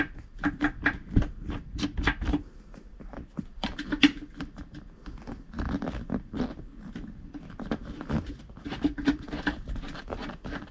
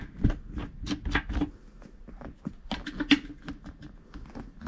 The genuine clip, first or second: second